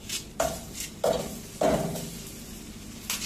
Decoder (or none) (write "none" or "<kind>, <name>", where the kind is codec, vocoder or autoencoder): none